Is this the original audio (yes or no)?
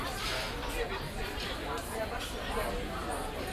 no